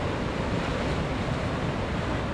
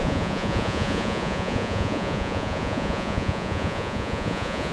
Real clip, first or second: first